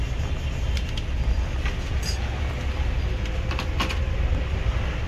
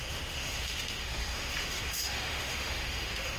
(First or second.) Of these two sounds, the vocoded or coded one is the second